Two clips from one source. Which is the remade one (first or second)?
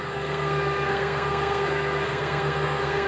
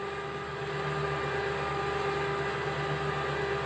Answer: first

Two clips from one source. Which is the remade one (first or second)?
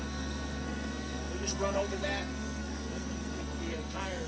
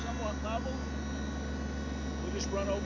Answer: first